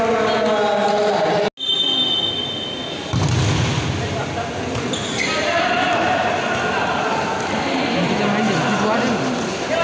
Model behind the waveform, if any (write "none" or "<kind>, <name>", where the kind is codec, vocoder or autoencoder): none